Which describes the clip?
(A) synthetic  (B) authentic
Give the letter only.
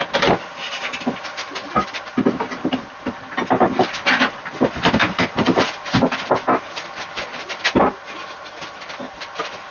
B